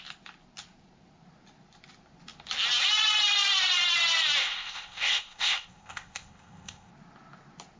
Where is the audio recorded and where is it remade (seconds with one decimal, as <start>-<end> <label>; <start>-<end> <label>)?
0.0-4.4 recorded; 4.4-6.9 remade; 6.9-7.8 recorded